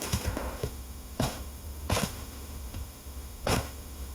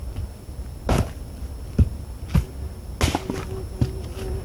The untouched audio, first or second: second